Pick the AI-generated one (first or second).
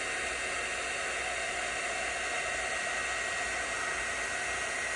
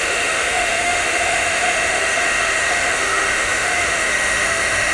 second